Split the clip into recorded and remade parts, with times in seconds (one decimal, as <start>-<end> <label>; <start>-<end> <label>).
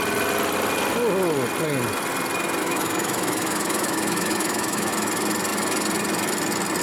0.0-2.6 recorded; 2.6-4.9 remade; 4.9-6.8 recorded